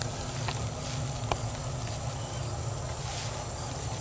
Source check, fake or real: real